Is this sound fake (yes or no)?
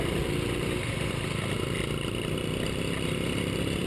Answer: no